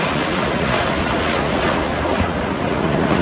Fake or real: fake